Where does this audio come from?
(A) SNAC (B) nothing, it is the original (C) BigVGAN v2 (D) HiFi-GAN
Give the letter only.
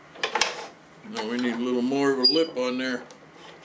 B